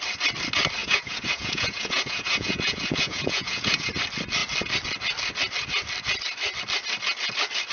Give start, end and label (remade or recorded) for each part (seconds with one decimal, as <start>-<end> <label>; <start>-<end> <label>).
0.0-0.8 recorded; 0.8-3.9 remade; 3.9-7.7 recorded